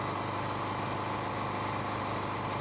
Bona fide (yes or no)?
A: yes